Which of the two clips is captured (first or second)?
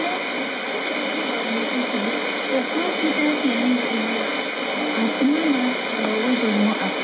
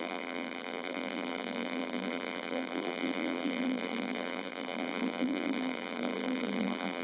first